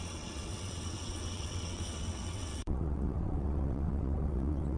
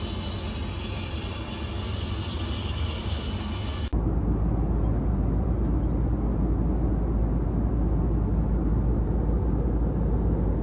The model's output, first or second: first